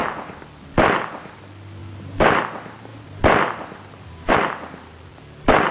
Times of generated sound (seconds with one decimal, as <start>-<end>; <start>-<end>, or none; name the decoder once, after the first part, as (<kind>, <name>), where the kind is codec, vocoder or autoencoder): 1.8-2.4 (vocoder, BigVGAN v2)